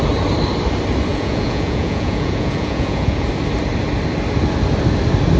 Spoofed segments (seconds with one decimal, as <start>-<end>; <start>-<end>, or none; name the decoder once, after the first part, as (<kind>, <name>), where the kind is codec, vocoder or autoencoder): 1.1-3.3 (vocoder, Vocos)